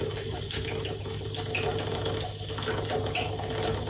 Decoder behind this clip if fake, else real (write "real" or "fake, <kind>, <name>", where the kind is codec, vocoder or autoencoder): real